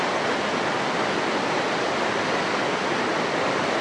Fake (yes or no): no